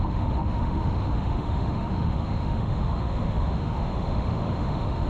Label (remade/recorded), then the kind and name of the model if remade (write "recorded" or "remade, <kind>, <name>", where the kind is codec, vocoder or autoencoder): remade, autoencoder, DAC-VAE